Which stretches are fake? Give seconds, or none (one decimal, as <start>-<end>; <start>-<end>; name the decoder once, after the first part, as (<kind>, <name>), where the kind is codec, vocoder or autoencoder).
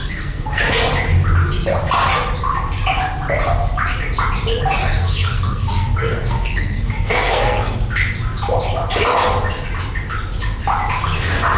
0.0-0.6 (codec, SNAC); 4.8-7.8